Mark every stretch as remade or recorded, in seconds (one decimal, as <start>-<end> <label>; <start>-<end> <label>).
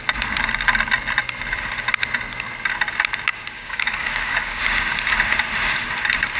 0.0-3.3 recorded; 3.3-4.6 remade; 4.6-6.4 recorded